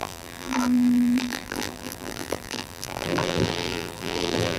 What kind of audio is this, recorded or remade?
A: remade